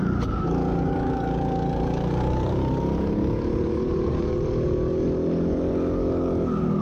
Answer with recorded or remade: remade